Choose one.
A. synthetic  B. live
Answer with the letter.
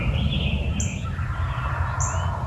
B